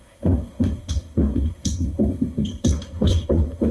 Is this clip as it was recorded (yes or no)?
no